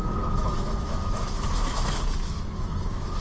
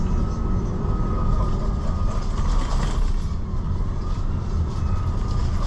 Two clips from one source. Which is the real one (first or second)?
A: second